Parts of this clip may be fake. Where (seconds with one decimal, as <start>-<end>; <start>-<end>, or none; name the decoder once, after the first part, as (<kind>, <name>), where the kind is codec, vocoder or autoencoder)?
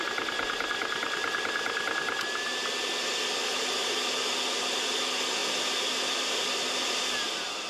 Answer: none